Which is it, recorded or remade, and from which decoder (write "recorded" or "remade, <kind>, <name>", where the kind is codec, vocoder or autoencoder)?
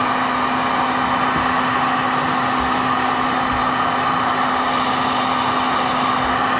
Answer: recorded